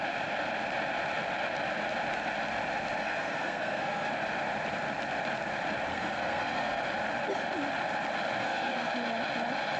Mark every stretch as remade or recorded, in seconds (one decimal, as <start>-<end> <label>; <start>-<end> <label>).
0.0-3.0 recorded; 3.0-4.1 remade; 4.1-5.9 recorded; 5.9-6.8 remade; 6.8-8.4 recorded; 8.4-8.9 remade; 8.9-9.8 recorded